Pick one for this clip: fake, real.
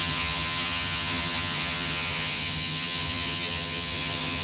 fake